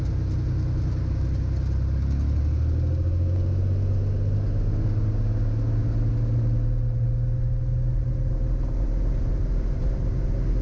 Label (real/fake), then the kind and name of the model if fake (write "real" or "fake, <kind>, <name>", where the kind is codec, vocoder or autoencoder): real